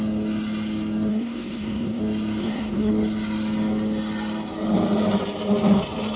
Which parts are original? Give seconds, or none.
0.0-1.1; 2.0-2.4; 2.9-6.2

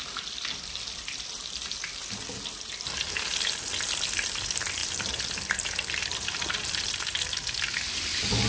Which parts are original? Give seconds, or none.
0.0-8.5

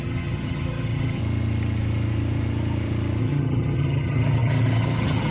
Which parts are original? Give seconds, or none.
1.2-3.2

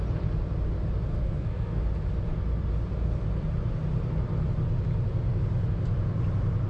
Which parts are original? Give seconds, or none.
0.0-1.2; 1.8-6.7

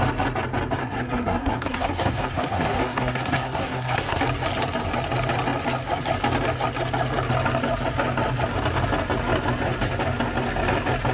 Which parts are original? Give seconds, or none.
0.0-0.8; 4.2-11.1

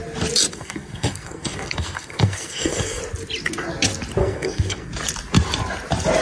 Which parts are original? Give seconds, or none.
0.0-0.5; 3.0-4.2; 4.9-6.2

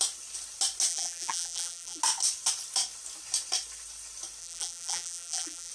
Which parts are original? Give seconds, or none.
0.0-0.9; 2.0-4.4